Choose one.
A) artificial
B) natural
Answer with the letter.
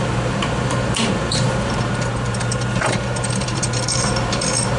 A